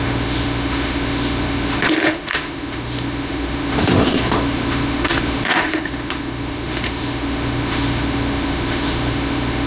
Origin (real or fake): fake